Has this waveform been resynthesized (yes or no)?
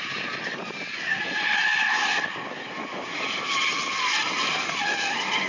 no